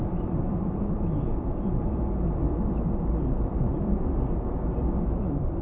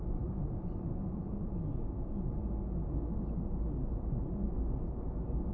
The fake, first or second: first